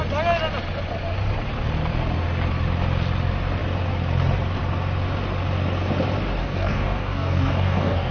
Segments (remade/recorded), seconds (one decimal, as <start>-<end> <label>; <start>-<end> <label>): 0.0-6.4 recorded; 6.4-8.1 remade

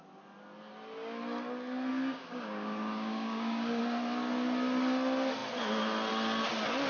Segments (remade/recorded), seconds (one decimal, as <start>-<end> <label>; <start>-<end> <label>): 0.0-1.9 recorded; 1.9-3.8 remade; 3.8-6.9 recorded

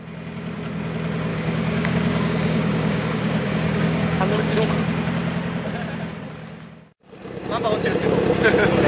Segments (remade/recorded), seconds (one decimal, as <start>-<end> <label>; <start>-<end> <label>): 0.0-1.3 recorded; 1.3-4.7 remade; 4.7-8.9 recorded

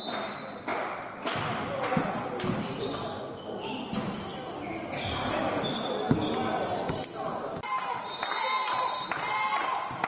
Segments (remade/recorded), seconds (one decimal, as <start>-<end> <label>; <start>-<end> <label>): 0.0-10.1 recorded

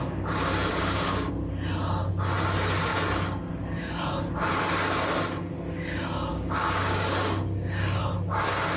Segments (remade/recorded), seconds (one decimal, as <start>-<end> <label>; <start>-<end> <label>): 0.0-0.7 recorded; 0.7-1.3 remade; 1.3-6.3 recorded; 6.3-8.0 remade; 8.0-8.8 recorded

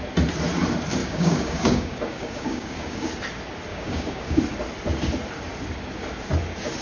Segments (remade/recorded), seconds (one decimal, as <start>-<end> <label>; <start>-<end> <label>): 0.0-1.0 recorded; 1.0-3.1 remade; 3.1-3.7 recorded; 3.7-4.4 remade; 4.4-6.8 recorded

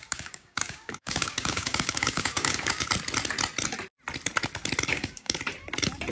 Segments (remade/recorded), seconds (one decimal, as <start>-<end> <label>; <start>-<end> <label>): 0.0-2.9 remade; 2.9-4.9 recorded; 4.9-5.4 remade; 5.4-6.1 recorded

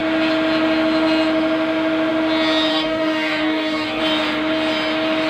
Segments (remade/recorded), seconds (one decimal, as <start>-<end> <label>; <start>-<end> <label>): 0.0-2.7 recorded; 2.7-4.0 remade; 4.0-5.3 recorded